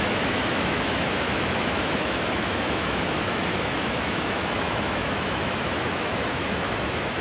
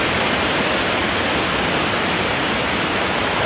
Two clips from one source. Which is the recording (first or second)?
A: second